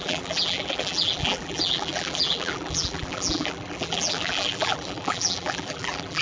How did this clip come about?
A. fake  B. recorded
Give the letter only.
A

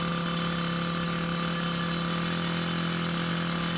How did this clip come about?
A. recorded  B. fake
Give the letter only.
A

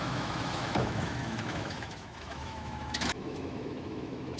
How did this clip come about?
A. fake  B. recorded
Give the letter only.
A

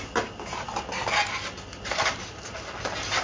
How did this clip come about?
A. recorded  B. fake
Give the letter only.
A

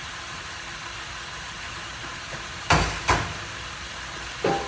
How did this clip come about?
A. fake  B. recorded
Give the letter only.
B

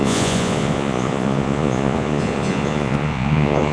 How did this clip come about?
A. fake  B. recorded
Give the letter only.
A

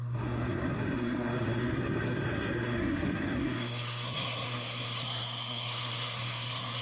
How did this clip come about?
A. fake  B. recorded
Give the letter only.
A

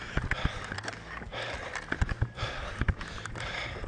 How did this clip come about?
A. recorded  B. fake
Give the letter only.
A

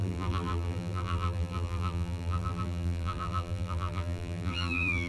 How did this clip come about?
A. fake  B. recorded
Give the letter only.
A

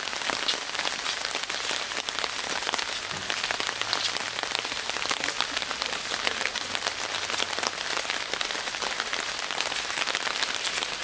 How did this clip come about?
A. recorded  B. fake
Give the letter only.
A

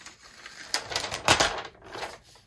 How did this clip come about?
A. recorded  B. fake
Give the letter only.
A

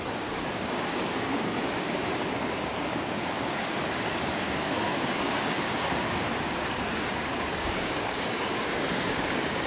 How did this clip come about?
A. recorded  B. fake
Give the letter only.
B